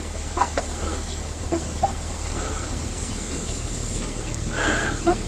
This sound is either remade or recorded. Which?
remade